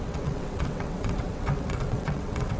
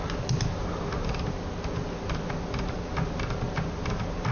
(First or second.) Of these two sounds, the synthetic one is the first